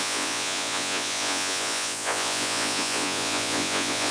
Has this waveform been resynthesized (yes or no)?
yes